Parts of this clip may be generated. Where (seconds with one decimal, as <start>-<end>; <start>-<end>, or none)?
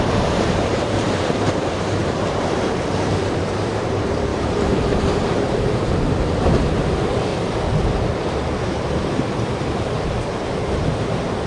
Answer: 0.0-7.3; 8.2-11.5